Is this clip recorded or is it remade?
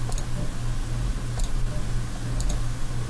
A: recorded